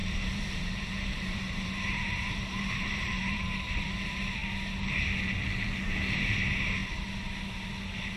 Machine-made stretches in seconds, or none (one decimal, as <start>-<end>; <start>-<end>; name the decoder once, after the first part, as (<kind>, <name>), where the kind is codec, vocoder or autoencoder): 0.0-3.7 (vocoder, BigVGAN v2)